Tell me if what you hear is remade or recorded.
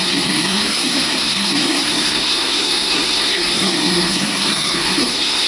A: remade